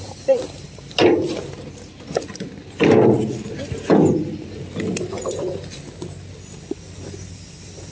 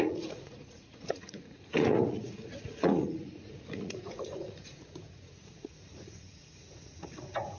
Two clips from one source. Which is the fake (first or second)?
second